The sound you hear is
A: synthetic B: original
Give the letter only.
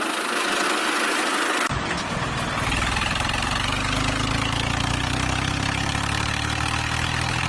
B